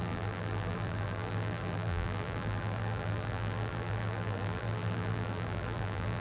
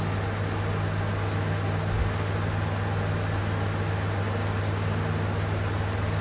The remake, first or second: first